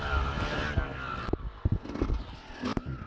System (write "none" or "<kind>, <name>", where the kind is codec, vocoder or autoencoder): none